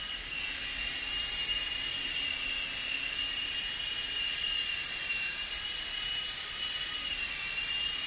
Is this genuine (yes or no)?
no